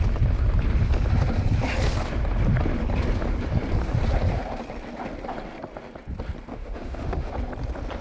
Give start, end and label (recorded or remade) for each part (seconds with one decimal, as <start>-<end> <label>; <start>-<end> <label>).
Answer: 0.0-6.5 recorded; 6.5-7.3 remade; 7.3-8.0 recorded